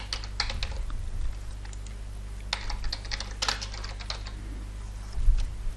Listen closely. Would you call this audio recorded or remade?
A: recorded